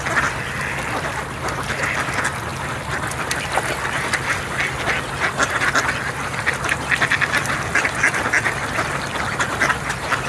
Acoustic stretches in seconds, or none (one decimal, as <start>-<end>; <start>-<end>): 0.0-10.3